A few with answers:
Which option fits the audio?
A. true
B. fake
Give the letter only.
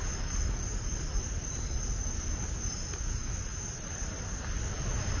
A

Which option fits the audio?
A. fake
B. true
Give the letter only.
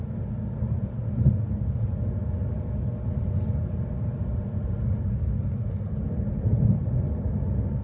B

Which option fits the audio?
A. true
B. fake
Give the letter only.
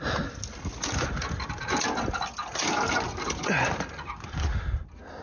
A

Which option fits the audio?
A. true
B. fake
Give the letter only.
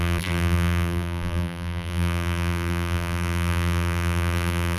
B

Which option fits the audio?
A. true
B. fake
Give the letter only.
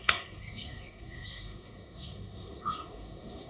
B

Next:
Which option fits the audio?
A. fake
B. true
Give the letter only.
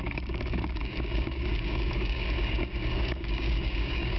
A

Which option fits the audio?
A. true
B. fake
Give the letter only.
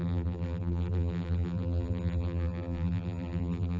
B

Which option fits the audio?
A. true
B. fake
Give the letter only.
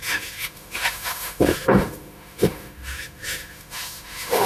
B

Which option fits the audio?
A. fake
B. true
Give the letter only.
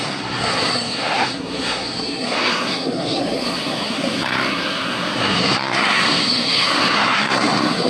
A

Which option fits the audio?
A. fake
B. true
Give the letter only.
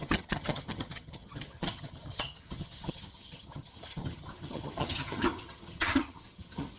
A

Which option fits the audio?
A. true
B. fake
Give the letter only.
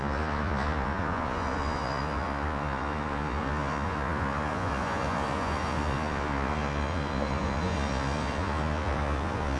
B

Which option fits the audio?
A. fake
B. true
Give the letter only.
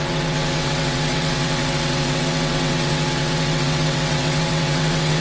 A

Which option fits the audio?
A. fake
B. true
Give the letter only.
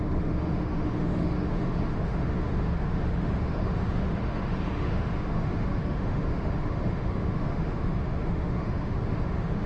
A